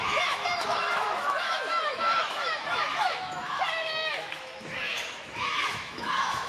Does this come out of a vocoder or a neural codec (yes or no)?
yes